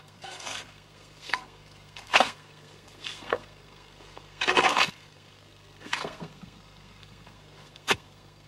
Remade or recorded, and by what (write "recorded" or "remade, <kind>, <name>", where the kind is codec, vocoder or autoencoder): remade, codec, SNAC